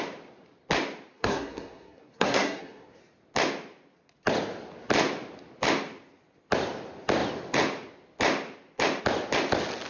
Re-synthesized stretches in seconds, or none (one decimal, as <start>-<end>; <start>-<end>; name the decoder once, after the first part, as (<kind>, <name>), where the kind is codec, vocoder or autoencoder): 1.1-3.0 (codec, SNAC)